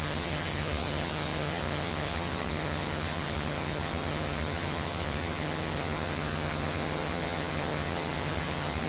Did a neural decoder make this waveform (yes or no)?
yes